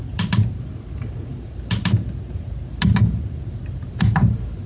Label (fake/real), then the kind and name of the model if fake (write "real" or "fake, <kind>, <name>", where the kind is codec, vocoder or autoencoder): fake, vocoder, BigVGAN v2